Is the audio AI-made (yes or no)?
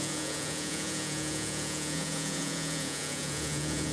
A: yes